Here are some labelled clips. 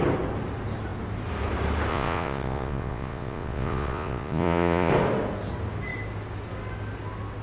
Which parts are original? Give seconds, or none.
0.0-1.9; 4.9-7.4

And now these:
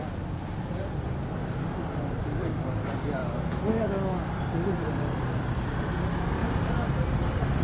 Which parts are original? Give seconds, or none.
1.4-2.2; 3.2-5.8; 6.4-7.0

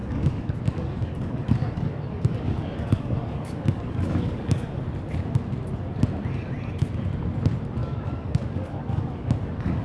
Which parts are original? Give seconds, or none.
4.8-7.8

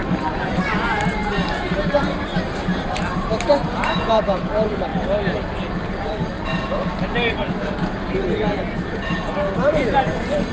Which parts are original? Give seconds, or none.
2.3-3.3; 4.9-5.9

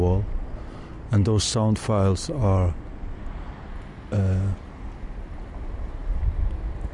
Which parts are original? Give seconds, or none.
0.0-6.9

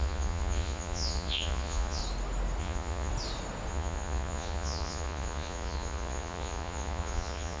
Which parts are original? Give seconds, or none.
2.0-2.6; 3.1-3.7

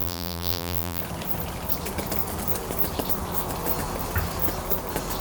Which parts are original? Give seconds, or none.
1.0-5.2